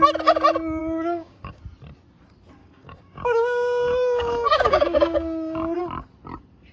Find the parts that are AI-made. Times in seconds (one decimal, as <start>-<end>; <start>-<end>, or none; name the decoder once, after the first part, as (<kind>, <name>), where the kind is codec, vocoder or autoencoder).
0.8-1.6 (codec, DAC); 2.6-5.8